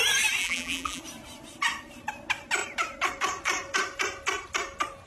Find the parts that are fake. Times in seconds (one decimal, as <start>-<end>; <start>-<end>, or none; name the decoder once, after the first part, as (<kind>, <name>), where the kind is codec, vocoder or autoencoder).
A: 0.4-1.0 (vocoder, BigVGAN v2)